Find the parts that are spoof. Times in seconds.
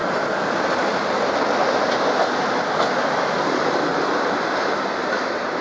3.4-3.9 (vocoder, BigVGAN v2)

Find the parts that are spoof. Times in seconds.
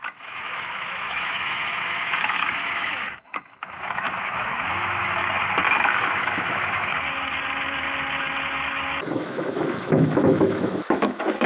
0.0-5.2 (autoencoder, DAC-VAE); 5.7-6.9; 9.1-11.5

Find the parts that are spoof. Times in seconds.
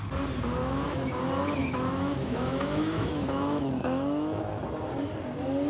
0.6-1.2 (autoencoder, DAC-VAE); 1.6-4.6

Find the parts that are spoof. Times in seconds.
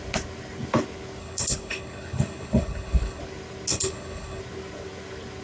1.2-3.2 (codec, HILCodec); 3.7-4.4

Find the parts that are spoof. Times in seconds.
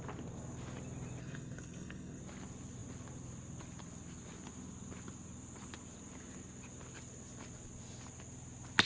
1.2-2.2 (codec, SNAC)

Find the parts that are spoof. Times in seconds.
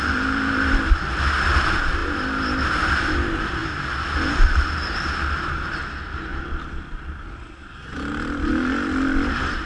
none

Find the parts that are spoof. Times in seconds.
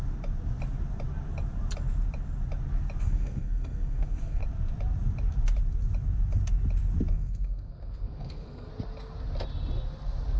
3.0-4.4 (codec, SNAC); 7.1-8.7